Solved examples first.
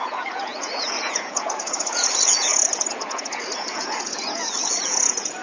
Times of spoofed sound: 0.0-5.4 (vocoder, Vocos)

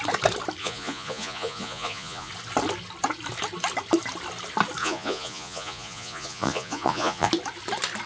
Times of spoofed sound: 0.6-2.3 (vocoder, Vocos); 4.8-7.3

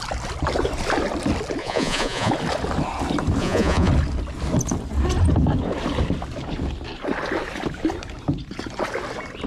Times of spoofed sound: 1.6-2.3 (vocoder, Vocos); 3.4-3.9

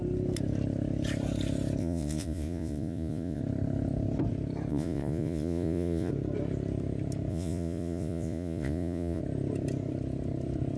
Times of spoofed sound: 1.8-3.4 (vocoder, Vocos); 4.7-6.1; 7.3-9.2